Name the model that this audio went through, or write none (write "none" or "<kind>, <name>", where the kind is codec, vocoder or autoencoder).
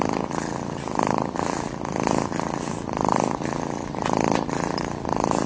none